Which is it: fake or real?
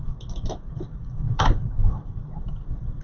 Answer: real